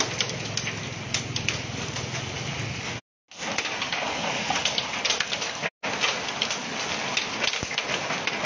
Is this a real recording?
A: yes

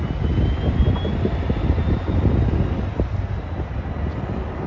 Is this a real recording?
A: yes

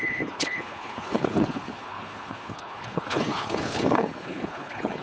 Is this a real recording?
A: no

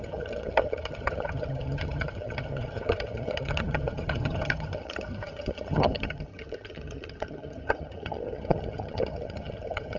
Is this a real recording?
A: no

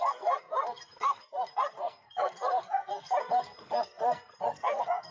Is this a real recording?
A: no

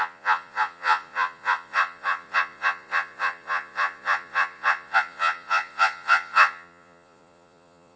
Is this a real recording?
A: no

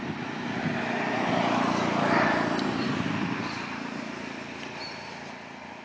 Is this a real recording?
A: yes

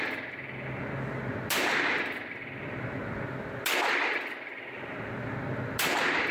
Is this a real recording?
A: yes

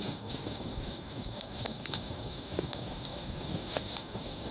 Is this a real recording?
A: no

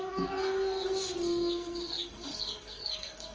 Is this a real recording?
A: no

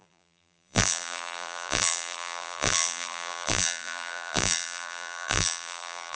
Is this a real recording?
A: no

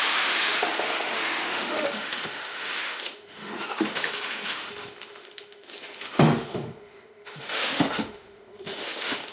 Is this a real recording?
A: no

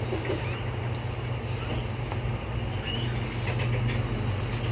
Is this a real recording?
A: yes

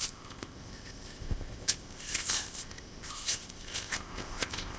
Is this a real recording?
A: no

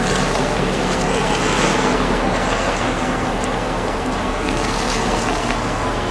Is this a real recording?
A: no